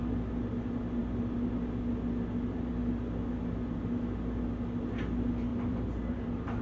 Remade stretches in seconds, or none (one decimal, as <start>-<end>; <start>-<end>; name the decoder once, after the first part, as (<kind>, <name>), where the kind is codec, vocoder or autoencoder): 5.5-6.6 (vocoder, BigVGAN v2)

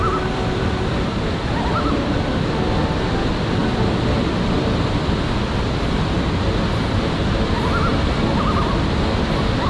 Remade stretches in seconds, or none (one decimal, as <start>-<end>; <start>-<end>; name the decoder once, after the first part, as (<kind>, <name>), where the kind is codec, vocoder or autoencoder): 0.0-9.7 (vocoder, BigVGAN v2)

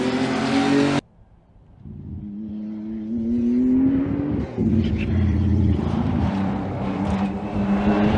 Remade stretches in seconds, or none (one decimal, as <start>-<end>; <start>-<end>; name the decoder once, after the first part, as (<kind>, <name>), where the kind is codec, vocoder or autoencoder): 4.6-6.7 (vocoder, BigVGAN v2)

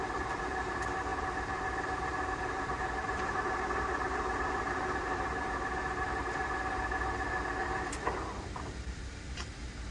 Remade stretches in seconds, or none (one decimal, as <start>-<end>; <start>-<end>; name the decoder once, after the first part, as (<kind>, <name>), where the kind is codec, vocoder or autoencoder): 0.0-9.9 (vocoder, BigVGAN v2)

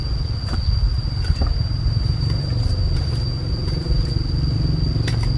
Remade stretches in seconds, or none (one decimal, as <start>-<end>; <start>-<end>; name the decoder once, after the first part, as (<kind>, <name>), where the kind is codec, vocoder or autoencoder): 0.9-4.1 (vocoder, BigVGAN v2)

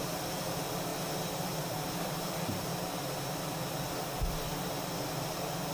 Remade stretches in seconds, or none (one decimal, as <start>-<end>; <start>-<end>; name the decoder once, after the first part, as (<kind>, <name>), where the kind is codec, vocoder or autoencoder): 0.0-0.9 (vocoder, BigVGAN v2); 1.6-2.7; 5.0-5.7

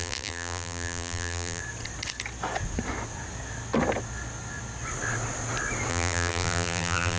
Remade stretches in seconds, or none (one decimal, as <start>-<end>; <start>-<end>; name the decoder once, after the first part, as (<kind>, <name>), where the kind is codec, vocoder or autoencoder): 0.0-1.6 (vocoder, BigVGAN v2); 5.9-7.2

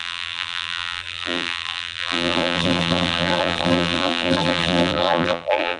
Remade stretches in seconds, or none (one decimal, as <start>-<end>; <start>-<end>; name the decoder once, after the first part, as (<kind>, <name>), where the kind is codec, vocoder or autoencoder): 0.0-5.8 (vocoder, BigVGAN v2)